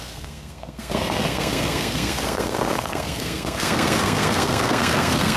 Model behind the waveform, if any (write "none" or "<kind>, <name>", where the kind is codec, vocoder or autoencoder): codec, SNAC